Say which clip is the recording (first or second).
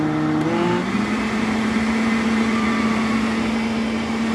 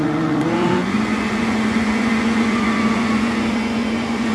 first